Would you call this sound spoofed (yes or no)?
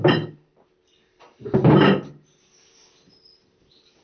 yes